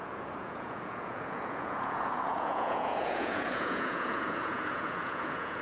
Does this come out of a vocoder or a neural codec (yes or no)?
yes